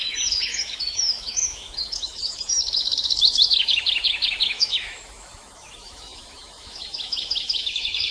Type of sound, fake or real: fake